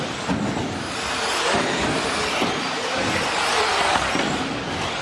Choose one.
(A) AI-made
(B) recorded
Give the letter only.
B